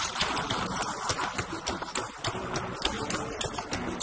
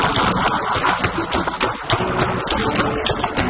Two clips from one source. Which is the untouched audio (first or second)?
second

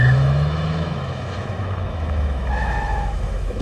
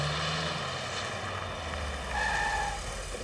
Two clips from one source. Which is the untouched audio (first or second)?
second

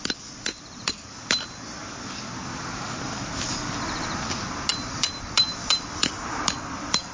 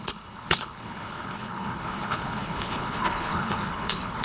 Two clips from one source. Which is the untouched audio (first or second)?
first